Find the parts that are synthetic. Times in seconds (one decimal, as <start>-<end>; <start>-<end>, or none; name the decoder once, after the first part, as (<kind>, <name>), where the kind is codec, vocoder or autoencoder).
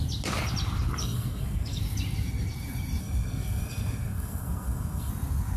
1.0-1.8 (codec, SNAC); 3.0-5.1